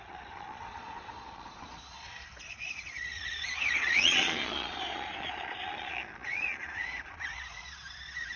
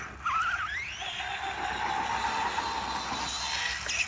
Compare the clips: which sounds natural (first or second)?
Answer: second